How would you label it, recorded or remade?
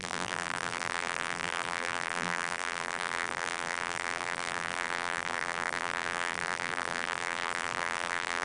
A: remade